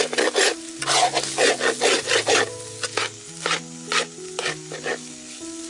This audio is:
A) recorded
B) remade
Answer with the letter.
A